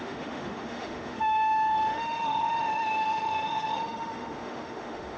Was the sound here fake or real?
fake